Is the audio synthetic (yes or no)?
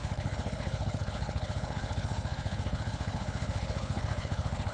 yes